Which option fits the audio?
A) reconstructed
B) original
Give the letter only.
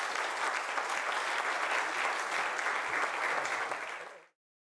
B